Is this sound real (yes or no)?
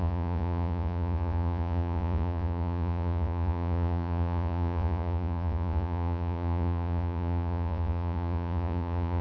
no